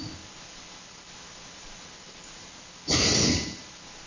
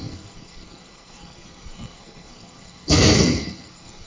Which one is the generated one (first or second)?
second